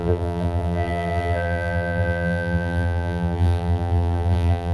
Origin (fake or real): fake